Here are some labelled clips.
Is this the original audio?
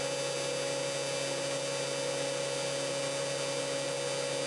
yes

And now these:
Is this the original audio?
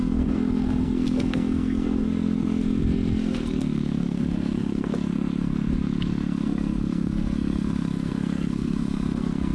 no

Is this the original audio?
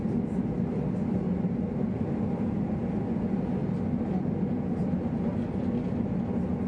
yes